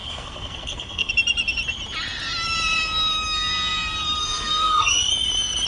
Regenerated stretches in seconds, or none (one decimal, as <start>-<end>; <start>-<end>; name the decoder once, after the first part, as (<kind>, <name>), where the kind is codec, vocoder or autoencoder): 0.0-1.1 (codec, SNAC); 4.2-5.1